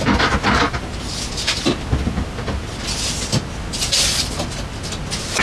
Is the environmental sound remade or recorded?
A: recorded